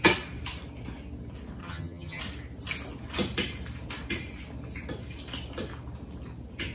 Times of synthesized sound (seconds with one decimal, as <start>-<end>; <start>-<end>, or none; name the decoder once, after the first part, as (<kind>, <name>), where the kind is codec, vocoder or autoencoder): 1.6-2.2 (vocoder, HiFi-GAN)